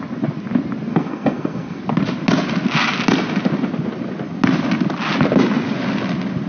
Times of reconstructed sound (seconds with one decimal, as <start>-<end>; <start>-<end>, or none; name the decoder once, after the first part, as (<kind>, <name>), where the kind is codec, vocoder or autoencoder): 0.9-1.8 (codec, SNAC)